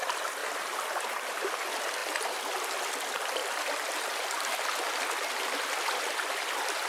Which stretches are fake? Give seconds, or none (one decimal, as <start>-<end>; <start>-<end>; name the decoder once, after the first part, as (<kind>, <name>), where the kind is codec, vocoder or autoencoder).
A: 0.4-1.5 (vocoder, BigVGAN v2); 2.0-2.9; 3.4-5.3